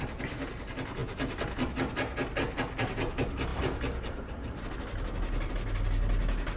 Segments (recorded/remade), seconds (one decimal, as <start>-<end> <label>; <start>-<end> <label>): 0.0-6.6 recorded